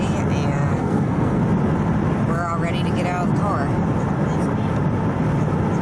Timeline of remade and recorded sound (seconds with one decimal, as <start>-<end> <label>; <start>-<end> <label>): 0.0-0.7 recorded; 0.7-1.4 remade; 1.4-5.8 recorded

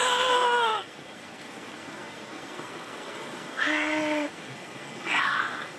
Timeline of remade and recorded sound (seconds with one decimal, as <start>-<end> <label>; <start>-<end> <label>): 0.0-5.8 remade

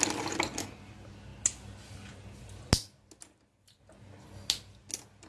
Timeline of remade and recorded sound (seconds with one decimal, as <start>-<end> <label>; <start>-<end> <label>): 0.0-5.3 recorded

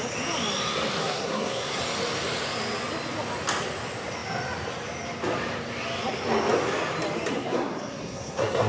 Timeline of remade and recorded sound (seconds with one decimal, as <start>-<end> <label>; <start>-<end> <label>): 0.0-1.0 recorded; 1.0-1.8 remade; 1.8-7.3 recorded; 7.3-8.7 remade

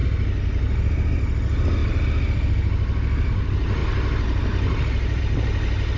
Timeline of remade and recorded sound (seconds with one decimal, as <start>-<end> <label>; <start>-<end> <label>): 0.0-6.0 recorded

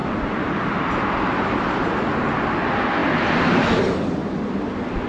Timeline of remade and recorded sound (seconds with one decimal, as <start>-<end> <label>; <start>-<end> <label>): 0.0-5.1 recorded